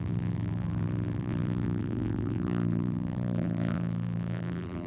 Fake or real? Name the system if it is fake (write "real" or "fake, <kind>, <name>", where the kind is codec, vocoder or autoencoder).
fake, vocoder, BigVGAN v2